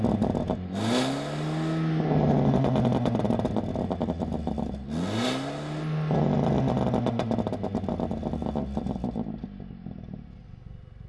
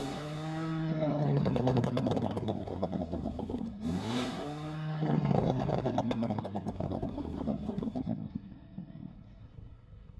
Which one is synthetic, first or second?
second